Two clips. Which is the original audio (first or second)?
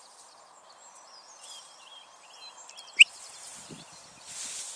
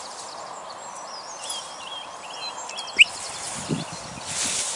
second